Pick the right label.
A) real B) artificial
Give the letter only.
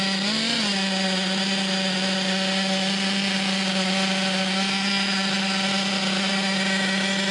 A